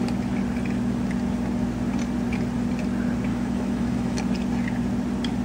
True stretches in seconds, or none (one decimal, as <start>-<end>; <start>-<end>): 0.0-3.3; 4.2-5.4